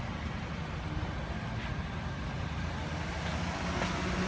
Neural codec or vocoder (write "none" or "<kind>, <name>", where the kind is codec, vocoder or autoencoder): none